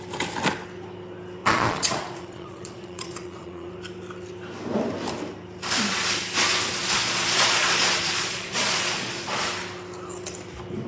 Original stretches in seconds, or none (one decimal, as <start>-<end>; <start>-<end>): 0.0-1.4; 3.7-6.8; 9.4-10.9